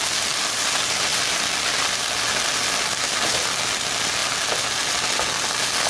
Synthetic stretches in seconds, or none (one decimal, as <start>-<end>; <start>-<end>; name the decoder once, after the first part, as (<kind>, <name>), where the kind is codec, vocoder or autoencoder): none